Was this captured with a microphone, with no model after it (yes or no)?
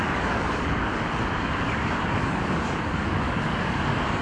no